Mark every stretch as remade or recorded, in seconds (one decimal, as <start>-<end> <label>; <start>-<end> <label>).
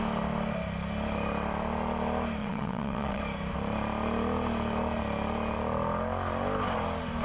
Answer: 0.0-2.4 recorded; 2.4-3.2 remade; 3.2-7.2 recorded